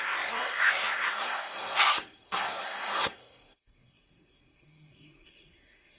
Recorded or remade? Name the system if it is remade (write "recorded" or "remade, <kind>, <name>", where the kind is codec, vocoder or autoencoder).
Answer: remade, codec, SNAC